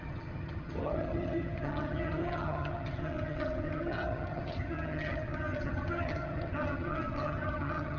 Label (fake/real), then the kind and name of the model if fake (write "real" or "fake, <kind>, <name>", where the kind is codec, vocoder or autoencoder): fake, vocoder, HiFi-GAN